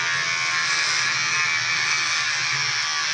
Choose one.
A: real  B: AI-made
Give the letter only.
A